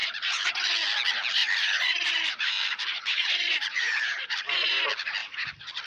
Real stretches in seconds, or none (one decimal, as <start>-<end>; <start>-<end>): 0.5-1.4; 4.6-5.2